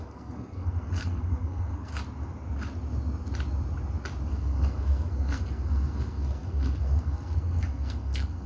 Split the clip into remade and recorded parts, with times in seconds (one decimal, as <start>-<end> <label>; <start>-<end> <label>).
0.0-1.9 remade; 1.9-4.3 recorded; 4.3-8.5 remade